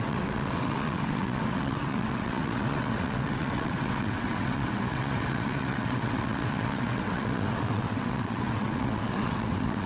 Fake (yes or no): yes